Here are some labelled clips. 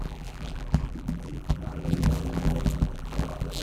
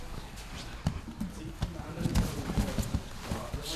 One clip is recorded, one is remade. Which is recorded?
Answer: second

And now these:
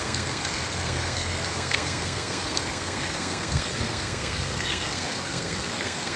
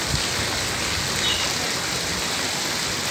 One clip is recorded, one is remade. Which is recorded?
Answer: second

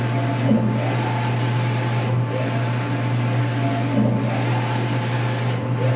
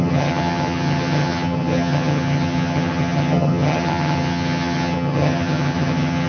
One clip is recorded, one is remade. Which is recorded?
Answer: first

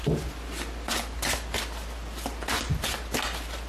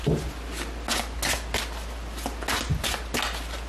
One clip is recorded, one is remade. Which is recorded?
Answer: second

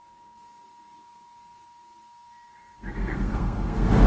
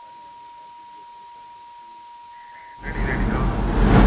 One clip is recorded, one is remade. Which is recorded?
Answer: second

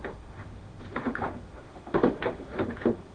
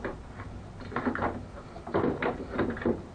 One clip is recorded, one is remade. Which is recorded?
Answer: second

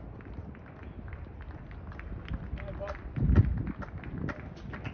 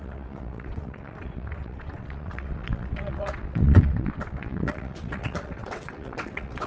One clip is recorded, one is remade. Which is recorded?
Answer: first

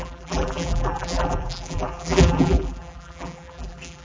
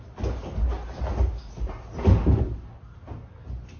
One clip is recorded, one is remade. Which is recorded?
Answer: second